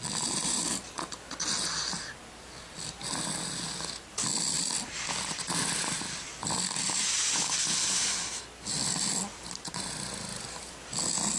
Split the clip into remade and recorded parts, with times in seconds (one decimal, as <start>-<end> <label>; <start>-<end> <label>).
0.0-11.4 recorded